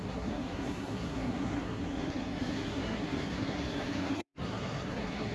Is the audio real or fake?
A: fake